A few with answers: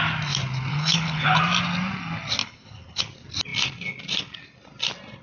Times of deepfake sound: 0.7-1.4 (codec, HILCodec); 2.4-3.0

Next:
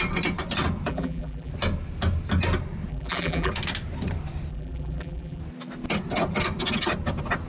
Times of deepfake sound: 0.9-1.5 (vocoder, BigVGAN v2); 2.9-3.5; 4.5-5.4